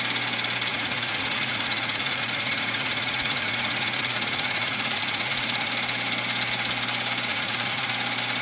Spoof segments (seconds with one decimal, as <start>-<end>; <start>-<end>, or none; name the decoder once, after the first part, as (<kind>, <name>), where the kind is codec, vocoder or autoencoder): 0.7-5.7 (vocoder, Vocos); 7.3-7.9